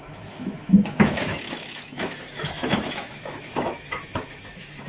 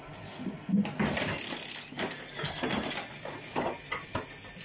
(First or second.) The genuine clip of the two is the second